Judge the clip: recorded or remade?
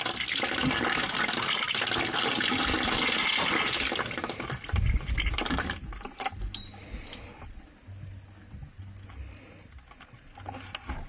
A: recorded